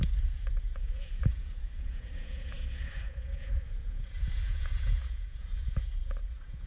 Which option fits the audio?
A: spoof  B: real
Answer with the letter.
A